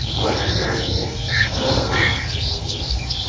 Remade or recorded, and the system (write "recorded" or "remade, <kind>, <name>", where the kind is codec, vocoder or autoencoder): remade, codec, SNAC